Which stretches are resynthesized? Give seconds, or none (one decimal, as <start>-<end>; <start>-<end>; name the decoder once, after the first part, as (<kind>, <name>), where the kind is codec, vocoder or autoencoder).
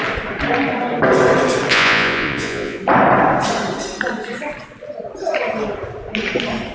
1.7-2.8 (vocoder, Vocos)